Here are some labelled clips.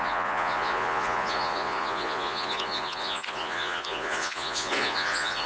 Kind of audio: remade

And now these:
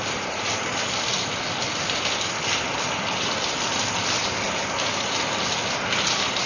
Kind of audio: recorded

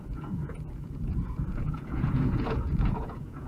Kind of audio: remade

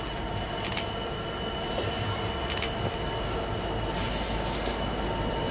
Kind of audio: recorded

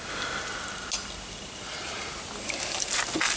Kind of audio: recorded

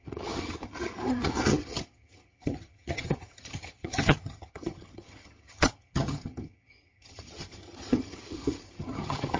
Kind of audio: remade